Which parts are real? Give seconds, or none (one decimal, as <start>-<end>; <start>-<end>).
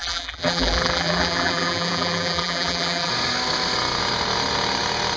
3.1-5.2